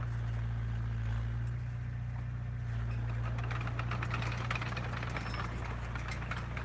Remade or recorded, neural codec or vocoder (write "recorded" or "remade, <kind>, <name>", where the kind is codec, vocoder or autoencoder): recorded